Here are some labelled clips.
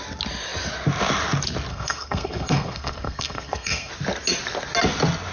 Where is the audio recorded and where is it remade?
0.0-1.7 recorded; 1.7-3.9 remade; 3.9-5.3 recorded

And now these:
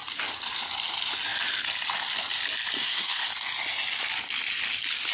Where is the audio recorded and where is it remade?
0.0-2.8 recorded; 2.8-3.3 remade; 3.3-5.1 recorded

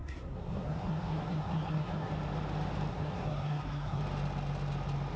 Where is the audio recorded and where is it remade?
0.0-2.1 remade; 2.1-2.9 recorded; 2.9-4.0 remade; 4.0-5.2 recorded

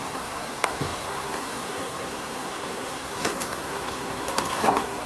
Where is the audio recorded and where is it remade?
0.0-5.1 remade

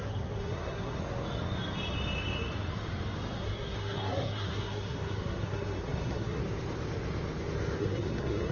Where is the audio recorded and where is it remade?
0.0-1.0 remade; 1.0-3.4 recorded; 3.4-6.4 remade; 6.4-7.8 recorded; 7.8-8.5 remade

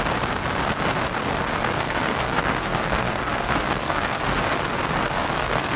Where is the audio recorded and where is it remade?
0.0-1.2 recorded; 1.2-4.2 remade; 4.2-5.0 recorded; 5.0-5.8 remade

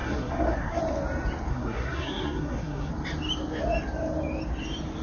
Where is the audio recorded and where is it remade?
0.0-0.8 remade; 0.8-1.5 recorded; 1.5-2.9 remade; 2.9-5.0 recorded

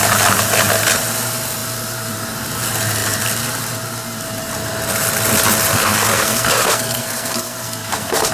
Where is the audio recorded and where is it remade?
0.0-5.7 recorded; 5.7-8.3 remade